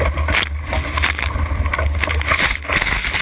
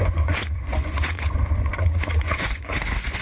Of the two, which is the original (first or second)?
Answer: first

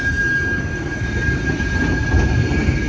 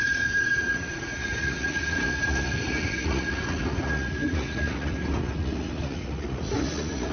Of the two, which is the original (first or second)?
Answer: first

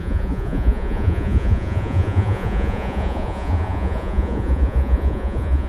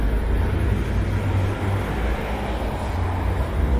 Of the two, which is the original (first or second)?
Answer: second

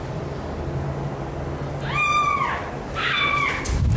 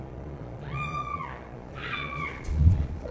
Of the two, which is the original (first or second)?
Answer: first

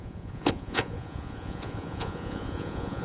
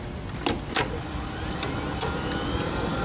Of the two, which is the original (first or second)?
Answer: second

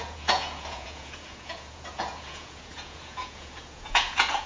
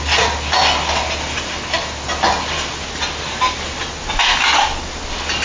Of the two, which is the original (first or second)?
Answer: second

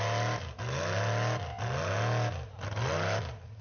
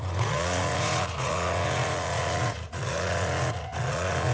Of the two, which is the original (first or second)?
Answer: first